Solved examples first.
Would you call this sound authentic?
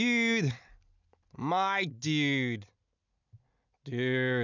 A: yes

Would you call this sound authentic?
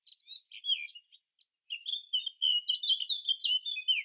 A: yes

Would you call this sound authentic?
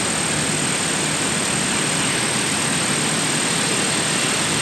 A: yes